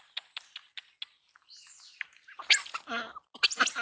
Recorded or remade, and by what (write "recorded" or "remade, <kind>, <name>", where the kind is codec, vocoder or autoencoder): recorded